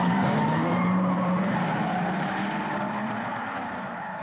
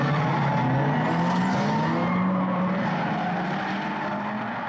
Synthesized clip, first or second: first